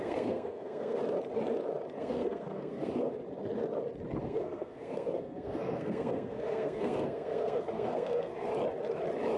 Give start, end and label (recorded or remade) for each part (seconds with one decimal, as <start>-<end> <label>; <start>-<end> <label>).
0.0-1.0 remade; 1.0-2.0 recorded; 2.0-3.1 remade; 3.1-4.2 recorded; 4.2-8.5 remade; 8.5-9.4 recorded